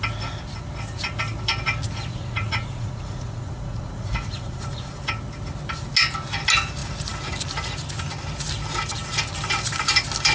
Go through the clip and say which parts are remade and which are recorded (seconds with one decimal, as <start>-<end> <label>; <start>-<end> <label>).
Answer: 0.0-2.1 recorded; 2.1-5.0 remade; 5.0-10.3 recorded